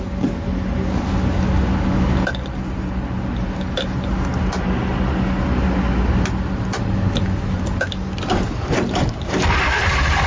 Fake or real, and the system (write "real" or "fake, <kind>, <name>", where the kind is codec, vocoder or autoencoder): real